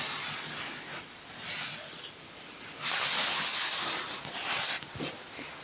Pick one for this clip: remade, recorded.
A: recorded